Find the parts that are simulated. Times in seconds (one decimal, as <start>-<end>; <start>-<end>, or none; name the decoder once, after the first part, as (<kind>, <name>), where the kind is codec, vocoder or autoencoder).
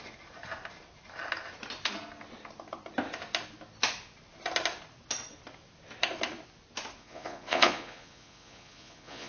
7.0-9.3 (vocoder, Vocos)